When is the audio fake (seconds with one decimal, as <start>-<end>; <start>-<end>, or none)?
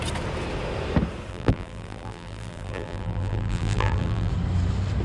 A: 1.3-4.3